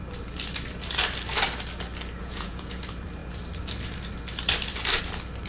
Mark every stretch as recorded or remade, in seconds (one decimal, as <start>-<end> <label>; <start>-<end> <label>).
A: 0.0-2.2 recorded; 2.2-2.8 remade; 2.8-5.5 recorded